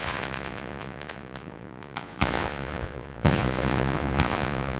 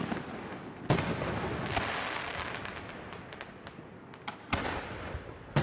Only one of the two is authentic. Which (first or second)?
second